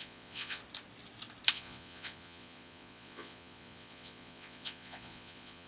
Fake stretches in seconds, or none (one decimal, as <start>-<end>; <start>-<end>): 0.0-0.6; 1.5-5.7